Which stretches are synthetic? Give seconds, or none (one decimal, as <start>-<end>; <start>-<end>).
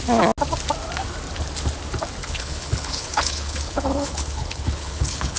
2.2-5.4